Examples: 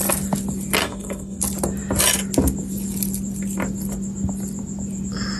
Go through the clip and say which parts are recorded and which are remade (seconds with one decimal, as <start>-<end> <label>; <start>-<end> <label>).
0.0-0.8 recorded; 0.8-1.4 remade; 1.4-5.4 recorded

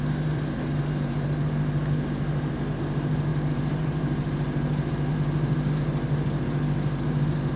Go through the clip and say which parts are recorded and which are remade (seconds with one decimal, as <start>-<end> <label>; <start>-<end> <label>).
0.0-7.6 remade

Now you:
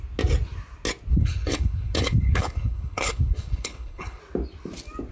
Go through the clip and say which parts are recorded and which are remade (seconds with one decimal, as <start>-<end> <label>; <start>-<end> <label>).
0.0-1.1 recorded; 1.1-4.2 remade; 4.2-5.1 recorded

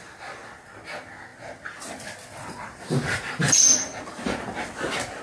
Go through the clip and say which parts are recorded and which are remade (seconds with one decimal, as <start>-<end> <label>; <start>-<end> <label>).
0.0-5.2 recorded

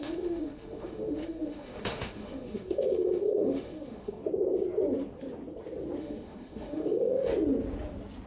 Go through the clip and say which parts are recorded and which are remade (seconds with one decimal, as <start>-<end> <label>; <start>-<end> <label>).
0.0-4.2 remade; 4.2-6.0 recorded; 6.0-7.3 remade; 7.3-8.3 recorded